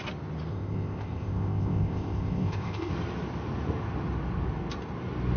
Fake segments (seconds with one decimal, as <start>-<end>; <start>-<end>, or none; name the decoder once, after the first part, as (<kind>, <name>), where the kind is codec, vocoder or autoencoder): 0.5-2.9 (codec, ZipCodec)